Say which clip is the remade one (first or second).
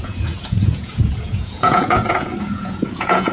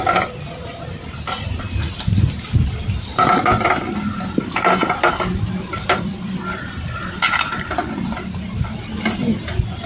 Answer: first